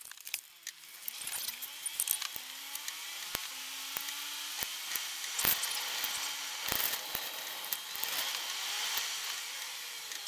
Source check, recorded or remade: recorded